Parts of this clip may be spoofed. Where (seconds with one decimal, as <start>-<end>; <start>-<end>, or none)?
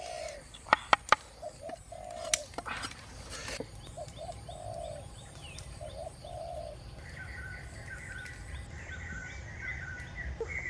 2.4-3.9; 5.4-6.6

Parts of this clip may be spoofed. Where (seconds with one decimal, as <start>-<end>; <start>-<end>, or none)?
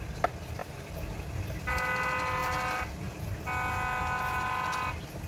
none